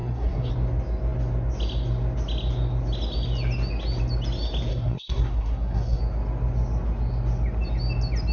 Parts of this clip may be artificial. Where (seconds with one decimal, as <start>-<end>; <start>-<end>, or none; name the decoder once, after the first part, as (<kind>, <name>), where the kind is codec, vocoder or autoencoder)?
0.0-0.5 (codec, SNAC); 4.7-6.0

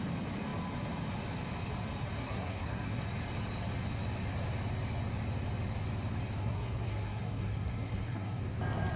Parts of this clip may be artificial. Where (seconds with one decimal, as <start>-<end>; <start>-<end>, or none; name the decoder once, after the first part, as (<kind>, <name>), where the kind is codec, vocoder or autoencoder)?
2.2-3.0 (codec, SNAC); 6.4-8.4

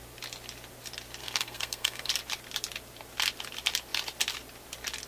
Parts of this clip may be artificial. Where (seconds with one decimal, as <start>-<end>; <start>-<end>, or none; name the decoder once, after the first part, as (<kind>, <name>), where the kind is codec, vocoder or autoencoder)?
1.2-2.1 (codec, SNAC)

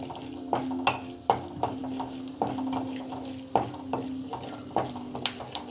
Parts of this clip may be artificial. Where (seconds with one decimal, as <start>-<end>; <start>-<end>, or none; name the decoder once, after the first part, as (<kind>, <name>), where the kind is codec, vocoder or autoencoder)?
none

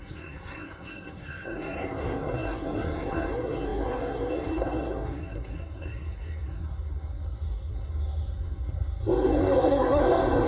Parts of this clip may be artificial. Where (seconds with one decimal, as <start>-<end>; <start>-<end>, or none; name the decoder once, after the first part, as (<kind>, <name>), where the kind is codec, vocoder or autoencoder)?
0.0-10.5 (codec, SNAC)